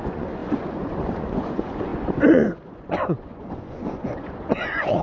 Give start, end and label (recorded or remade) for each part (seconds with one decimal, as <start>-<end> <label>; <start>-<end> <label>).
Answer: 0.0-5.0 remade